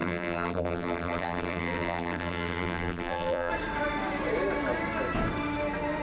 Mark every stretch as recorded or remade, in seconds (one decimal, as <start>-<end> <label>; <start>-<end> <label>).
0.0-3.5 remade; 3.5-6.0 recorded